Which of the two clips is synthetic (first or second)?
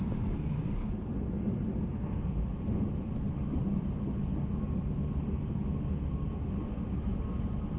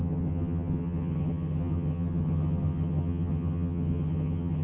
second